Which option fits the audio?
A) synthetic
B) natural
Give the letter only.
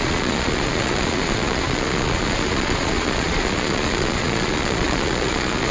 A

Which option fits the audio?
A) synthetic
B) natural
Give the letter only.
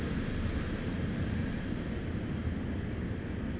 B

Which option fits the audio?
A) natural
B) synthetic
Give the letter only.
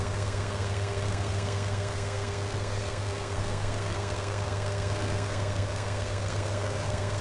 B